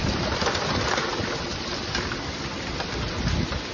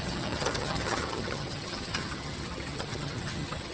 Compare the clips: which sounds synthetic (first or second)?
second